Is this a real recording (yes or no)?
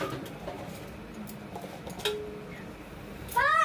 yes